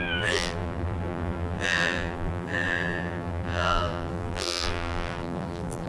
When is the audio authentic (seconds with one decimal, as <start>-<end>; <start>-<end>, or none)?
none